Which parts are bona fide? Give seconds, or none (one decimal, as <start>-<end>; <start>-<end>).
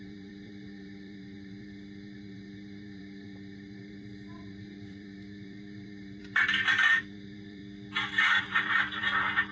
7.6-8.4